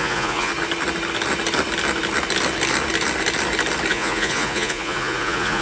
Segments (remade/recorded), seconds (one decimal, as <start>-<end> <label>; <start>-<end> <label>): 0.0-0.5 remade; 0.5-3.9 recorded; 3.9-5.6 remade